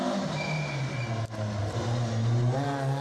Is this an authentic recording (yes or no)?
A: yes